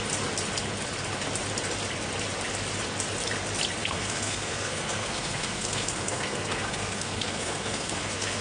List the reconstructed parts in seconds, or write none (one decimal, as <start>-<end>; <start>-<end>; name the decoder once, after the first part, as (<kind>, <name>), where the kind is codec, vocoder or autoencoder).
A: 3.8-8.4 (codec, SNAC)